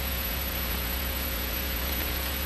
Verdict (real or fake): fake